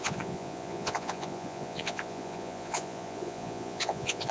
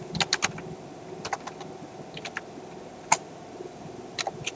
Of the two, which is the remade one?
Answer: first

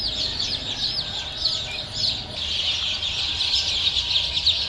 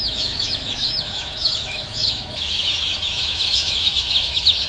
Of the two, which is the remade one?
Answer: second